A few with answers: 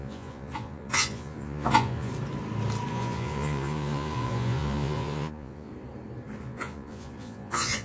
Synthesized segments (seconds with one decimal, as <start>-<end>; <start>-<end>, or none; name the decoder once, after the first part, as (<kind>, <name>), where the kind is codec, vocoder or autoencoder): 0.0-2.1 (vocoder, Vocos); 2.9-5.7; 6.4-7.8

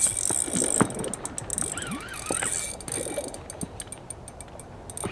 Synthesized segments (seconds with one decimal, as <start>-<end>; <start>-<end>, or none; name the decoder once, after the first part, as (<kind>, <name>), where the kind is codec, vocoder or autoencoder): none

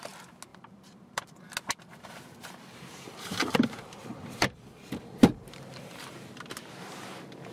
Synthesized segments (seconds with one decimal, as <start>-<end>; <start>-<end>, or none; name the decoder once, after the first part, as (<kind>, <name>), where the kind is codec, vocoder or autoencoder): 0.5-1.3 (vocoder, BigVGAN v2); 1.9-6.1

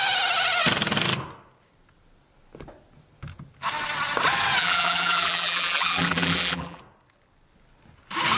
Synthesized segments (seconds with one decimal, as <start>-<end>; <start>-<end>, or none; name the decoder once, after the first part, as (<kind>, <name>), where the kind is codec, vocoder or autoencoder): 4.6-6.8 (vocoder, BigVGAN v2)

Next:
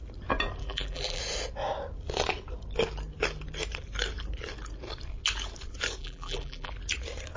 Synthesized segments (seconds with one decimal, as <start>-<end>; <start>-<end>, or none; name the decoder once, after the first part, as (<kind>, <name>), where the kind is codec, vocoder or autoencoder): 0.6-1.2 (vocoder, BigVGAN v2); 6.0-6.7